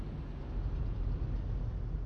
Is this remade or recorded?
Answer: recorded